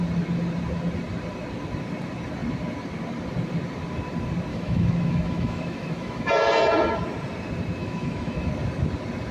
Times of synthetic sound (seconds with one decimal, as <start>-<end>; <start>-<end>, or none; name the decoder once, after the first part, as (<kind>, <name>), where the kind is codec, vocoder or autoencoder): 4.5-6.3 (autoencoder, DAC-VAE); 7.8-8.5